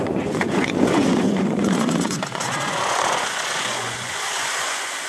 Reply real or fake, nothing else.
fake